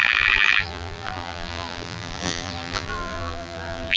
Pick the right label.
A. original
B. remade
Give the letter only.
B